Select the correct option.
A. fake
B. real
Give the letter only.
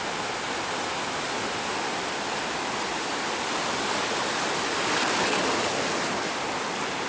B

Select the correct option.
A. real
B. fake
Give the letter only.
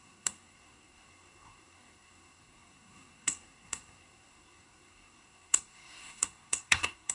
B